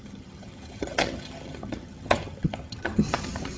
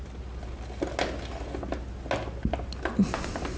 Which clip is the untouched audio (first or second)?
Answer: second